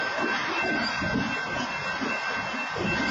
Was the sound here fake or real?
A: real